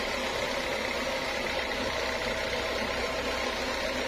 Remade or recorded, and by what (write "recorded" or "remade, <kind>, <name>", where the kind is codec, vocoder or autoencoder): recorded